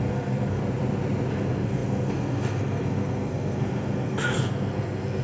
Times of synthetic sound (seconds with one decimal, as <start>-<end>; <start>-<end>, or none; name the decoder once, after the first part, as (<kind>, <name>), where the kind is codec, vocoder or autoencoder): 0.0-0.6 (codec, SNAC); 1.3-5.2